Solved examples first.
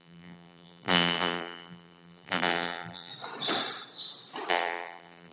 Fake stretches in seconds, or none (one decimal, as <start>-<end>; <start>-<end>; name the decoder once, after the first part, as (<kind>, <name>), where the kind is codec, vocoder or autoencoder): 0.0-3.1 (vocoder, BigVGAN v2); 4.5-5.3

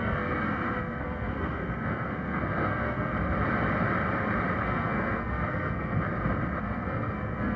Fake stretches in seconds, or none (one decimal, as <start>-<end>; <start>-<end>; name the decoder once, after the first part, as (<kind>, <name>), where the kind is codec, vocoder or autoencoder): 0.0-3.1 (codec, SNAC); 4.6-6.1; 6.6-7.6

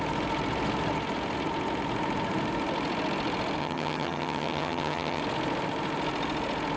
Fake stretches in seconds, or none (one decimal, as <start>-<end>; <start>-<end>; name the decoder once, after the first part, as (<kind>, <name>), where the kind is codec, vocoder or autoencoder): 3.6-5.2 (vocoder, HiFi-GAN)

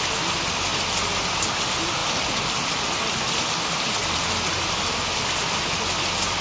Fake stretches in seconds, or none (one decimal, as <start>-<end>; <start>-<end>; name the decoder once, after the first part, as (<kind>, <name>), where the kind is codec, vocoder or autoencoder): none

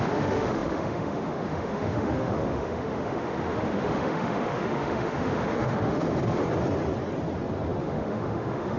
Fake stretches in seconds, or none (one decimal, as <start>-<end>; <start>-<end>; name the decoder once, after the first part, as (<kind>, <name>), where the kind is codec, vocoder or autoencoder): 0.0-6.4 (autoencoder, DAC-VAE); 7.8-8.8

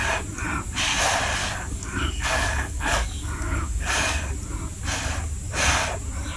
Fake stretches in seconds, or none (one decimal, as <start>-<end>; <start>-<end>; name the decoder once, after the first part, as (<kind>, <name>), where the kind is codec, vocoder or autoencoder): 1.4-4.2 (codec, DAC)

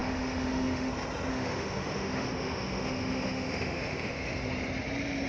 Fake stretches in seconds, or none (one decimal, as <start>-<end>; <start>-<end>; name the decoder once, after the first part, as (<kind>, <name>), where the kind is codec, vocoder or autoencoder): 0.0-0.9 (autoencoder, DAC-VAE); 1.3-4.5